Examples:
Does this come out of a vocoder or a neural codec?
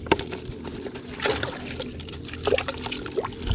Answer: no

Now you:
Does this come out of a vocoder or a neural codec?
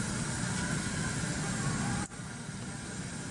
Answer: no